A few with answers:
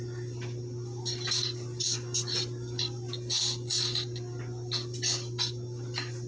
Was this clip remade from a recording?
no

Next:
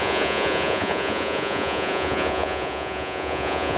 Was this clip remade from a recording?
yes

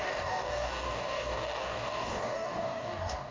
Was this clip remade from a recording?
yes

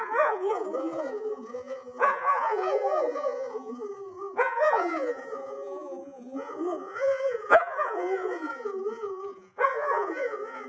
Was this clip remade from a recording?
yes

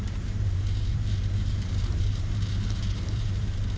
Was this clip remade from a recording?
yes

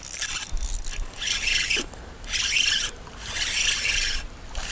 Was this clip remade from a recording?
no